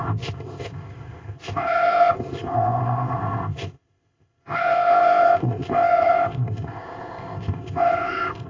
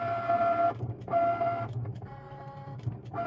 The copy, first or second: first